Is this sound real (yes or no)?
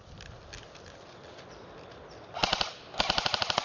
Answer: yes